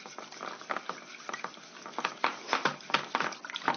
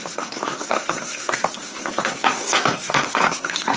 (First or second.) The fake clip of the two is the second